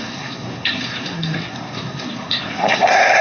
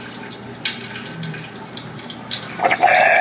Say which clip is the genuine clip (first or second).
second